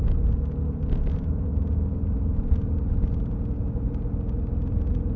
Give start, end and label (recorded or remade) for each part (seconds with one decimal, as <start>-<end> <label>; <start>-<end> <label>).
0.0-5.2 recorded